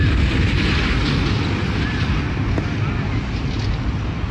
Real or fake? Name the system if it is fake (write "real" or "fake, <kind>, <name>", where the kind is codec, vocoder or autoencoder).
real